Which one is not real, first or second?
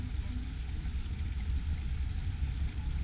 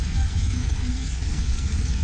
second